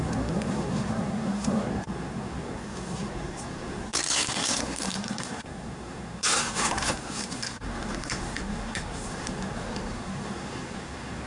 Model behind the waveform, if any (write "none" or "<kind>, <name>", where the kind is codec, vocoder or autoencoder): codec, SNAC